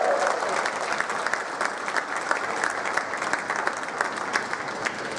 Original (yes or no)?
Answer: yes